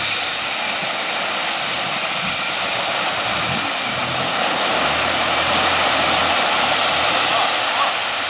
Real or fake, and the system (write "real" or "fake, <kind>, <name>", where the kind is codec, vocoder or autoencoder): real